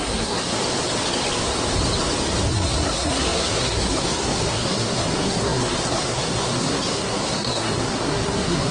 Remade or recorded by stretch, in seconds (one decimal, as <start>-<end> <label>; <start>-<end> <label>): 0.0-0.6 remade; 0.6-2.5 recorded; 2.5-8.7 remade